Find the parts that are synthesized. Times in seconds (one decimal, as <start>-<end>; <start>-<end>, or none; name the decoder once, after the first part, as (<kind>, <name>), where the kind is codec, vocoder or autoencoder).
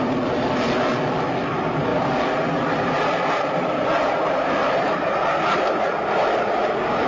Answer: none